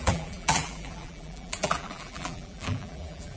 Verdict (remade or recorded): remade